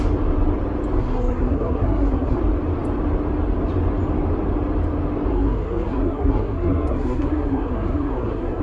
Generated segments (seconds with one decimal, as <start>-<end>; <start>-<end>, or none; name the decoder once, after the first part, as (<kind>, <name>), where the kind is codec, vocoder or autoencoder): 1.0-2.4 (codec, SNAC); 5.3-8.6